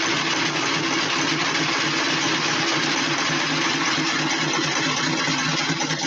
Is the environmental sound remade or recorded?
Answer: recorded